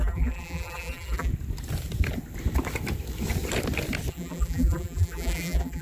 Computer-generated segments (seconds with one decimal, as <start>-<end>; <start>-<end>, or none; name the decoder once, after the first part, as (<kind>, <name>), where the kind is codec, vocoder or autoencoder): 0.0-1.3 (vocoder, BigVGAN v2); 4.1-5.8